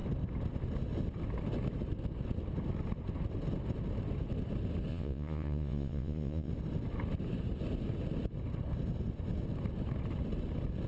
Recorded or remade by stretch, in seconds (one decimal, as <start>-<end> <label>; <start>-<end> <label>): 0.0-4.9 recorded; 4.9-6.5 remade; 6.5-10.9 recorded